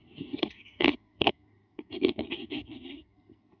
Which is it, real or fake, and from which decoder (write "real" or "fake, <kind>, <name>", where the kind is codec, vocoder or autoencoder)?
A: fake, codec, SNAC